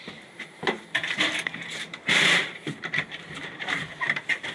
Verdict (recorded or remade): remade